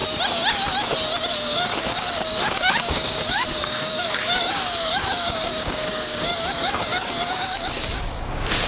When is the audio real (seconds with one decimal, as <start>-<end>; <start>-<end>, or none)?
0.0-1.3